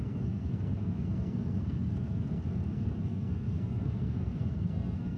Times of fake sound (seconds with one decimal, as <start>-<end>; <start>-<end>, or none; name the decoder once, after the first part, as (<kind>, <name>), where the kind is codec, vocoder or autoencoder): 0.0-5.2 (codec, SNAC)